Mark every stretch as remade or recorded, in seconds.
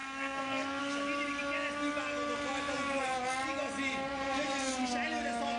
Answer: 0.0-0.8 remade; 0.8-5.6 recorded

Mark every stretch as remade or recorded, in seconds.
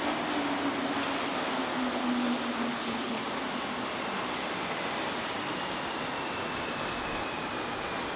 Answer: 0.0-2.7 recorded; 2.7-3.2 remade; 3.2-8.2 recorded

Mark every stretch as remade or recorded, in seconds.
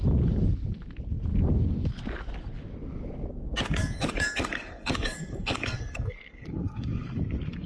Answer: 0.0-3.8 recorded; 3.8-7.7 remade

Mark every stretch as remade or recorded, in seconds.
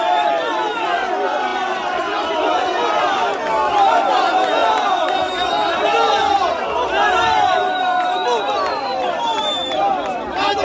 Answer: 0.0-10.6 remade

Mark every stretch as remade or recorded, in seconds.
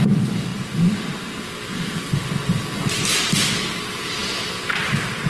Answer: 0.0-5.3 recorded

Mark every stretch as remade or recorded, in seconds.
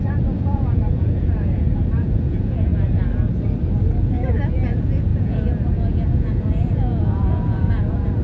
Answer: 0.0-2.7 remade; 2.7-4.0 recorded; 4.0-8.2 remade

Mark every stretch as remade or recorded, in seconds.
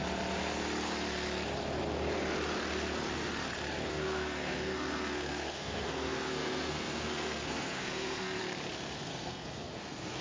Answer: 0.0-3.9 recorded; 3.9-8.4 remade; 8.4-9.1 recorded; 9.1-10.2 remade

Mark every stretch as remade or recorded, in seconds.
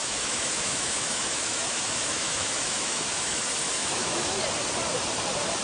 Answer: 0.0-3.4 remade; 3.4-3.8 recorded; 3.8-4.4 remade; 4.4-5.6 recorded